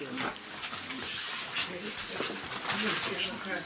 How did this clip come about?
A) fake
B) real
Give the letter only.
B